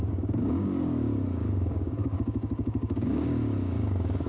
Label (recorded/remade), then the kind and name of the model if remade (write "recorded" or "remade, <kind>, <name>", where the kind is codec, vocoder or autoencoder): remade, codec, DAC